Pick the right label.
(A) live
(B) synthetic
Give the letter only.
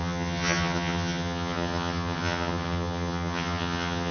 B